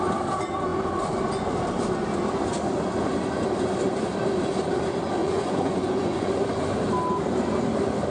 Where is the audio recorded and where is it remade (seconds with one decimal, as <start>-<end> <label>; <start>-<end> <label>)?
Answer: 0.0-5.2 recorded; 5.2-6.3 remade; 6.3-8.1 recorded